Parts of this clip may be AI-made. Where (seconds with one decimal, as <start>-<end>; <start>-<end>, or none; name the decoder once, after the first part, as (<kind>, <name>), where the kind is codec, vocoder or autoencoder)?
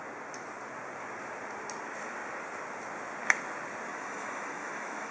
3.9-5.1 (autoencoder, DAC-VAE)